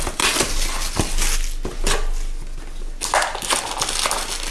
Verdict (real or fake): real